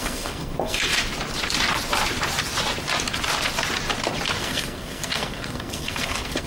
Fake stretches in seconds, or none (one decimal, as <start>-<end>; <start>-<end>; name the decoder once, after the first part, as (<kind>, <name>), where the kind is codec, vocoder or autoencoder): 0.0-0.9 (codec, SNAC); 4.4-6.5